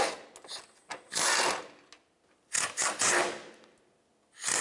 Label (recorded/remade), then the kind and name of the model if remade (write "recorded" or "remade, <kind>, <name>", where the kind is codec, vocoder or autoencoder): recorded